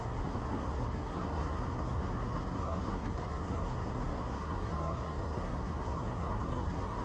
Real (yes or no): no